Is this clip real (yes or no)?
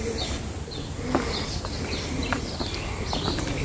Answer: yes